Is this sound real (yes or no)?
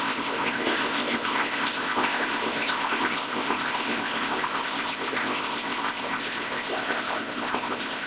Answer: no